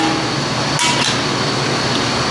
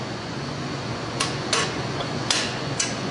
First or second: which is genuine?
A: first